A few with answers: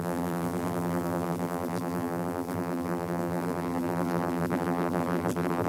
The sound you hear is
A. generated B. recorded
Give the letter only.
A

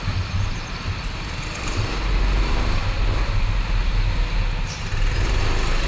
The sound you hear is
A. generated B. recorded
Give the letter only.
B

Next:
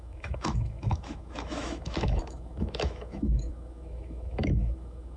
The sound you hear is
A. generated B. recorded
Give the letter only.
A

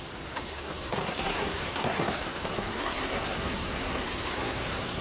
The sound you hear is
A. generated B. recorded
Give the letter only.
A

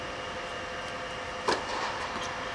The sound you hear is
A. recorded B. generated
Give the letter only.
A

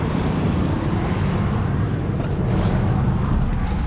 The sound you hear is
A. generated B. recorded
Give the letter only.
B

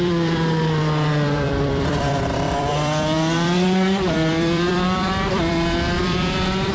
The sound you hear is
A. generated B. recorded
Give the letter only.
A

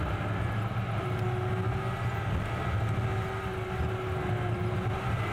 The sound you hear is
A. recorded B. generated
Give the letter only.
A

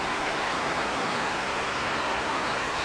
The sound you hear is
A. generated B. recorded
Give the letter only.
A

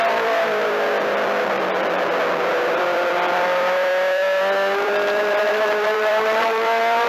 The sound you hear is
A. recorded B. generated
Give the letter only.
B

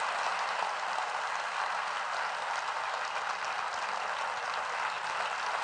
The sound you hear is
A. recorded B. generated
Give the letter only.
A